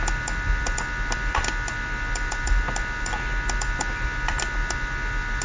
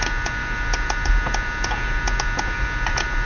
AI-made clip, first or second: second